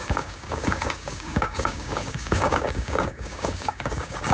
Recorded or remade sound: remade